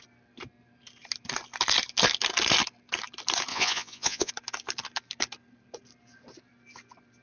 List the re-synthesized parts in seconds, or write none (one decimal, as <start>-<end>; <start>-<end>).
3.5-4.3